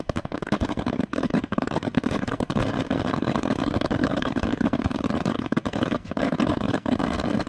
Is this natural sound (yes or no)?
no